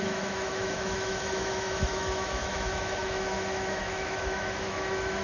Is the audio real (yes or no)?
no